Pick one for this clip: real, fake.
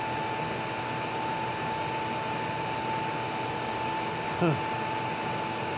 real